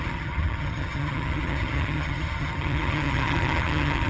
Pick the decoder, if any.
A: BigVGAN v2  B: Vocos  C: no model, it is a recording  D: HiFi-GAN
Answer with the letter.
D